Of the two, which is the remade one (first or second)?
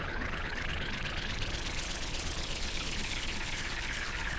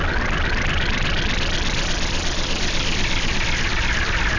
first